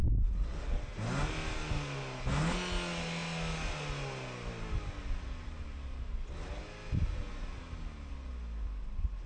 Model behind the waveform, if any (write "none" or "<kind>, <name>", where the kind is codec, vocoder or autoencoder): none